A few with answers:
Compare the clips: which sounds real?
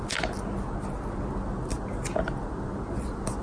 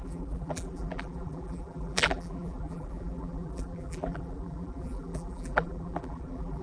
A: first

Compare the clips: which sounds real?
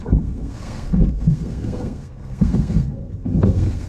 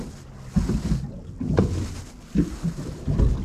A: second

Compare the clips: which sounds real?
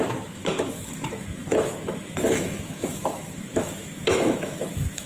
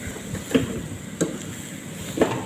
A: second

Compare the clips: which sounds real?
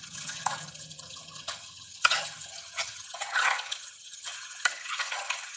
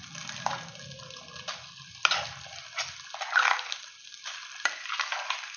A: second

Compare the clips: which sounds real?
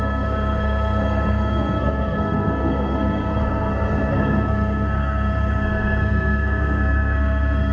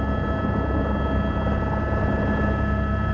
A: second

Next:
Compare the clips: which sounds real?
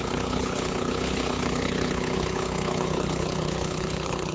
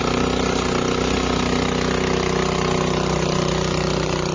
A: second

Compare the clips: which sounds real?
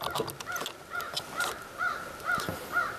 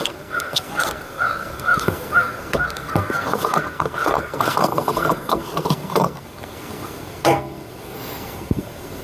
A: first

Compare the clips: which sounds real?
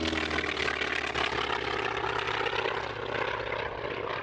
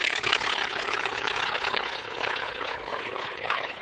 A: first